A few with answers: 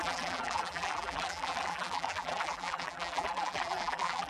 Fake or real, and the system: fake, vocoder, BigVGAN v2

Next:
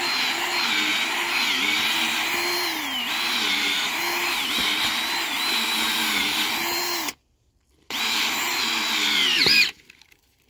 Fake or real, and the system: fake, vocoder, BigVGAN v2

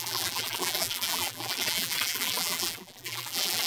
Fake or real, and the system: fake, vocoder, BigVGAN v2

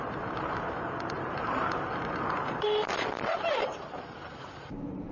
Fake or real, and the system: fake, vocoder, BigVGAN v2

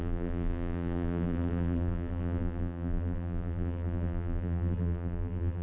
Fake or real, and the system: fake, vocoder, BigVGAN v2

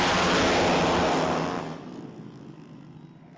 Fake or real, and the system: real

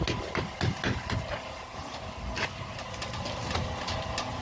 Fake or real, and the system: real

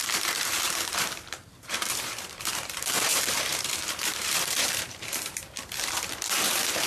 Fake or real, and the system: fake, vocoder, BigVGAN v2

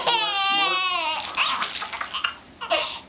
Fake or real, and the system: real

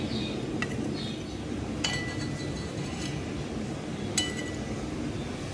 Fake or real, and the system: real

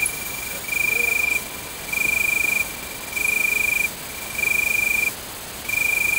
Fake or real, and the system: real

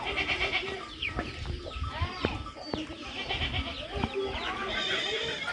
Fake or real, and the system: fake, vocoder, BigVGAN v2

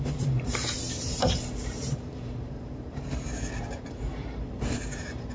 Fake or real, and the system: fake, vocoder, BigVGAN v2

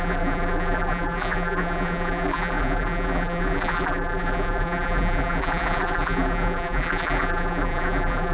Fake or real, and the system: fake, vocoder, BigVGAN v2